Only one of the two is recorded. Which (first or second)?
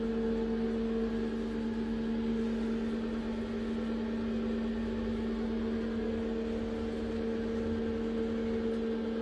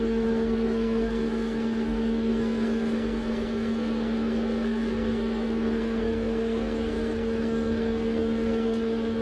first